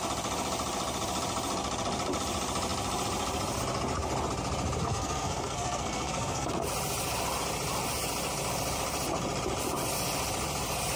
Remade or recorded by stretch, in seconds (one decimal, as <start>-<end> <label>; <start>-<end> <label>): 0.0-4.8 recorded; 4.8-6.5 remade; 6.5-11.0 recorded